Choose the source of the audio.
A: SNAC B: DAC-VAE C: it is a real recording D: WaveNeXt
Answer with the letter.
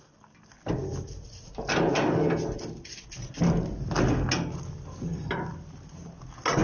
C